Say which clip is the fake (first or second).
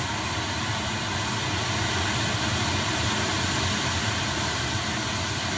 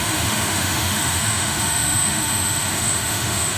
second